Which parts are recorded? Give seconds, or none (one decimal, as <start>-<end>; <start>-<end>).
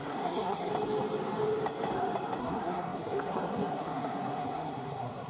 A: 0.7-2.4